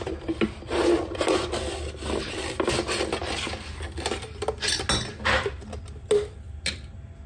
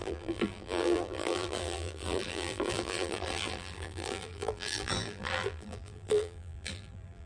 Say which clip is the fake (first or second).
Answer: second